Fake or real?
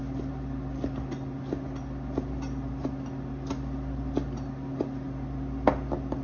real